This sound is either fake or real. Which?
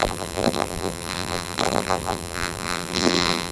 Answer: fake